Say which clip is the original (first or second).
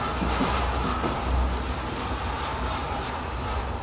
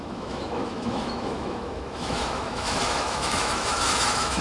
first